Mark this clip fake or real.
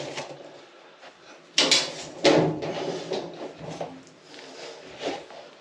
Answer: real